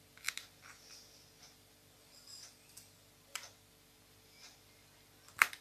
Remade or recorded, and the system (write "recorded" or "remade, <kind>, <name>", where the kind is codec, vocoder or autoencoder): recorded